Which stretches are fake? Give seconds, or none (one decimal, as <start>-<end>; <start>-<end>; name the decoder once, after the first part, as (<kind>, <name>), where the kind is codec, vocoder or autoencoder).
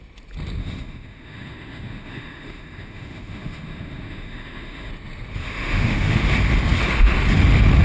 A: 0.6-4.9 (autoencoder, DAC-VAE); 5.4-6.3